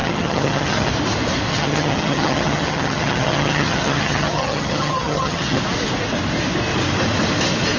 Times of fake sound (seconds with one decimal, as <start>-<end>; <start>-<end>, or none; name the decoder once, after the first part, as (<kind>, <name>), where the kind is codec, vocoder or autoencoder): 0.0-0.9 (vocoder, HiFi-GAN); 1.5-5.6